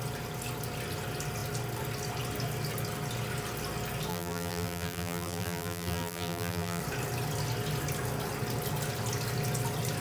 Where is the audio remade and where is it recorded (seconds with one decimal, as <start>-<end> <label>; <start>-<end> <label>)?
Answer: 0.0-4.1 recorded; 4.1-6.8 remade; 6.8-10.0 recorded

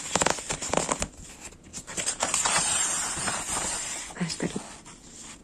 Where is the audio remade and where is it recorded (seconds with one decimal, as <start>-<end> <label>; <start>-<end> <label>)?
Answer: 0.0-1.7 recorded; 1.7-4.5 remade; 4.5-5.4 recorded

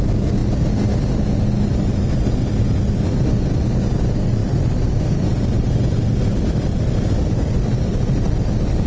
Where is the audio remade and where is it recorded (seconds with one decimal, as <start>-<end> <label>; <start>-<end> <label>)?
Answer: 0.0-4.4 recorded; 4.4-5.7 remade; 5.7-6.3 recorded; 6.3-8.9 remade

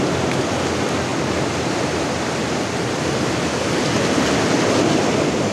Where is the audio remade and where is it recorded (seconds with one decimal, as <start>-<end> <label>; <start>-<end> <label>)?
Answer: 0.0-1.1 recorded; 1.1-3.4 remade; 3.4-5.5 recorded